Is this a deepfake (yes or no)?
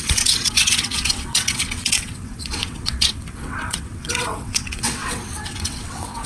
yes